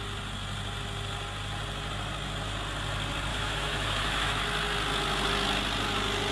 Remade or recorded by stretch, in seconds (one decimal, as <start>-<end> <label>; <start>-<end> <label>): 0.0-3.3 recorded; 3.3-4.4 remade; 4.4-6.3 recorded